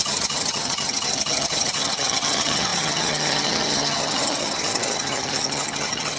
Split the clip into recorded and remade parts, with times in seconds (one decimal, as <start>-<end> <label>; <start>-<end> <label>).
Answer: 0.0-6.2 remade